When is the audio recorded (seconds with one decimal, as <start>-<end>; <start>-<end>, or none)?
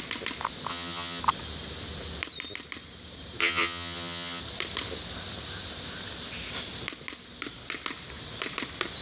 0.0-0.7; 1.2-3.4; 4.4-9.0